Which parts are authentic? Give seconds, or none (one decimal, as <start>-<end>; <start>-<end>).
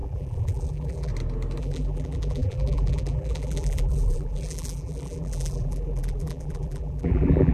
1.1-1.6